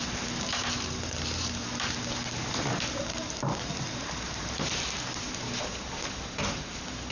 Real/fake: fake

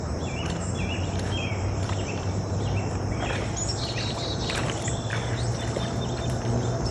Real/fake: fake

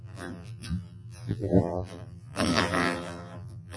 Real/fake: fake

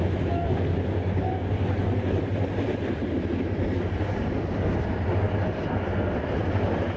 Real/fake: real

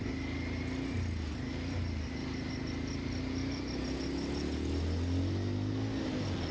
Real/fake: real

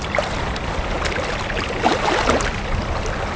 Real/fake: real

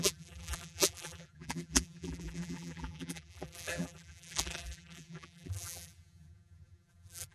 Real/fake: fake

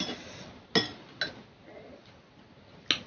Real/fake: real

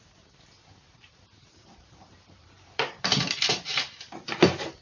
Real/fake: fake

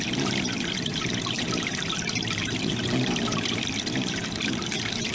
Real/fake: fake